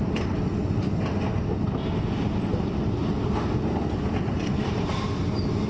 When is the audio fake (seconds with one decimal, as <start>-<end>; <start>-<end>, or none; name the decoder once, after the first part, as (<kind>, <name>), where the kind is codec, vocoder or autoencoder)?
none

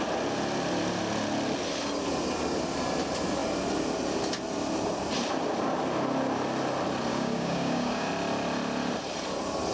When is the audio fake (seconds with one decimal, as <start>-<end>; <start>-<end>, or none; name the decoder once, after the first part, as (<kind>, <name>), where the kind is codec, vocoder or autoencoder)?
7.1-8.1 (codec, DAC)

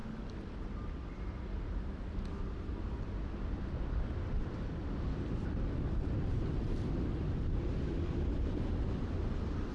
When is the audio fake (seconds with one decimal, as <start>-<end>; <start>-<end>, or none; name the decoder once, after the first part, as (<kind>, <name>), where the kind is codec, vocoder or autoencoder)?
none

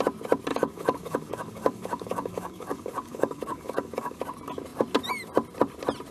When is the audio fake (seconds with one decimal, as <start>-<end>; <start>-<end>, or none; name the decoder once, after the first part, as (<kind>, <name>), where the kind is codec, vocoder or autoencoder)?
0.5-4.2 (codec, DAC)

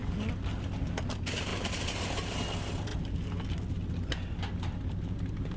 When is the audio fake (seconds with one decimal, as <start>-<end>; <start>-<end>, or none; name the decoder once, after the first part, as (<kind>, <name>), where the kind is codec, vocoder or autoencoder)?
none

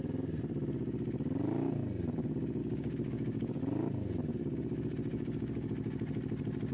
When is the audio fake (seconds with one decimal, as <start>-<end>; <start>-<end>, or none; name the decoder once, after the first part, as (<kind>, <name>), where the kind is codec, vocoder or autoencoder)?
2.6-3.6 (codec, DAC); 5.1-5.7

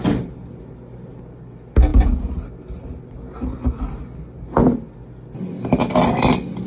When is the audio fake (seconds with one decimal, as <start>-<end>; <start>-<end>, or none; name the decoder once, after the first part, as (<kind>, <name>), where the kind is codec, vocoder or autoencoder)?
none